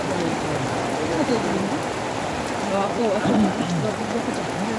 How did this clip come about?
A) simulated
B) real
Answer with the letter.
B